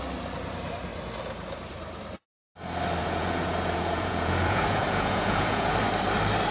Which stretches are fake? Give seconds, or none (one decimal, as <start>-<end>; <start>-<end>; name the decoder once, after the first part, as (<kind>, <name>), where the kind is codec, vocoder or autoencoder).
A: 3.0-5.7 (vocoder, Vocos)